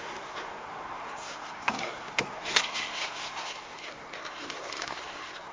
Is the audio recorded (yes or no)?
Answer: no